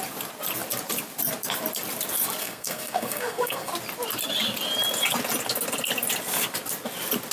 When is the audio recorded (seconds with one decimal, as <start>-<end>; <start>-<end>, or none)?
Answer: 0.0-2.4; 3.7-7.3